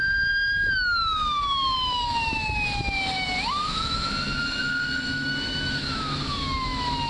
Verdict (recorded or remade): remade